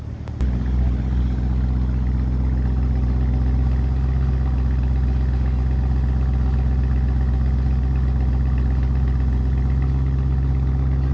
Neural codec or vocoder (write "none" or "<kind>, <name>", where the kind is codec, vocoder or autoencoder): none